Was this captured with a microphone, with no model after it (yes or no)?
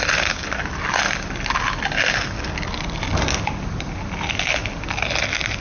yes